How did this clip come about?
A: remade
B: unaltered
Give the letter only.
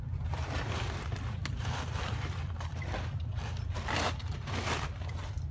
A